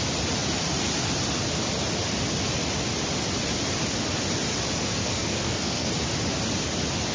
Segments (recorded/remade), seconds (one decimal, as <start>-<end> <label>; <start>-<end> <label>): 0.0-5.0 recorded; 5.0-5.9 remade; 5.9-7.1 recorded